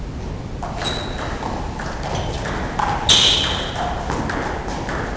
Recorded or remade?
recorded